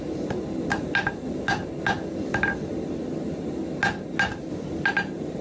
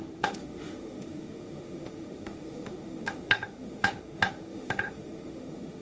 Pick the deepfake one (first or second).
second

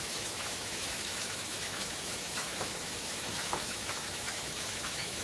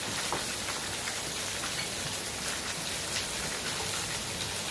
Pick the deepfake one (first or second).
first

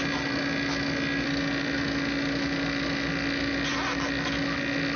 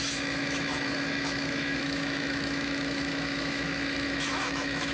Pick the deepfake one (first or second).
second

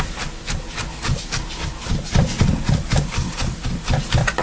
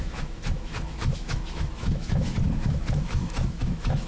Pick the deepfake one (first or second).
second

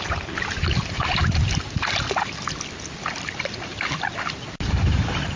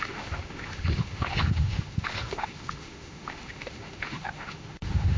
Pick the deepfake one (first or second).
second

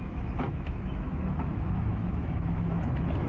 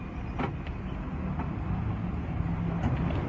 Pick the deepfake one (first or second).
first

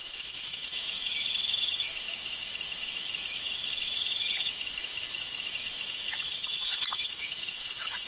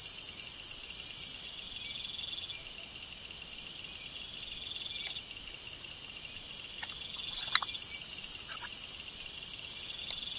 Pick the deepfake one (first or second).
first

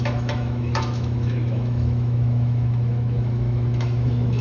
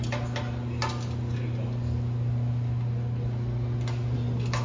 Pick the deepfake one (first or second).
first